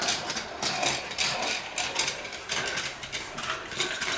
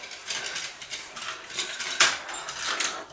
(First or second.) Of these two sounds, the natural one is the second